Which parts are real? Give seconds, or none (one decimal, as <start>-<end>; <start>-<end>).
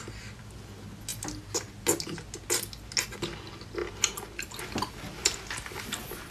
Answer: 0.0-6.3